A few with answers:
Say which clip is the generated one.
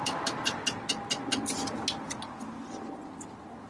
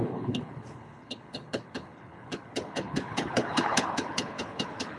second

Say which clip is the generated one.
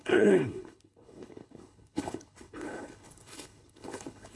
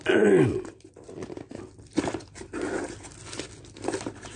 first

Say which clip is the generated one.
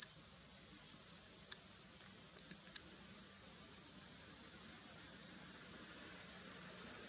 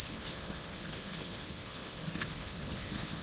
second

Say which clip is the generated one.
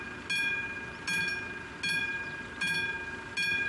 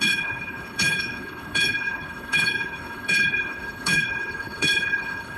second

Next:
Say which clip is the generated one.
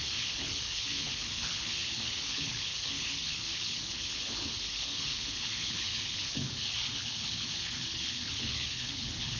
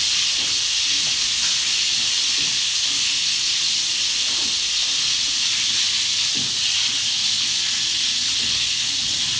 first